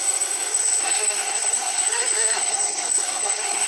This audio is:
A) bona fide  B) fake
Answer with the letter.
B